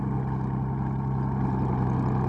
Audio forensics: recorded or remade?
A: recorded